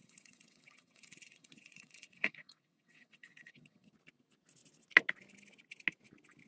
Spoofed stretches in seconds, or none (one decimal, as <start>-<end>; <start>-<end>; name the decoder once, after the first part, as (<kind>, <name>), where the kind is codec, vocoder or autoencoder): 0.0-3.9 (vocoder, WaveNeXt)